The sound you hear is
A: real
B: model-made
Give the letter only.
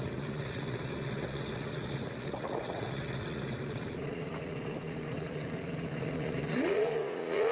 B